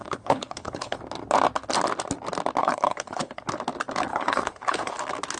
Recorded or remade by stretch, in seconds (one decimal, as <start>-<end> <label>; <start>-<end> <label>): 0.0-1.0 remade; 1.0-2.6 recorded; 2.6-3.4 remade; 3.4-4.1 recorded; 4.1-4.9 remade; 4.9-5.4 recorded